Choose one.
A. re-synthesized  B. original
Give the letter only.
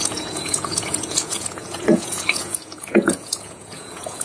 A